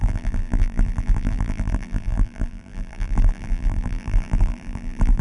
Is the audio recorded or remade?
remade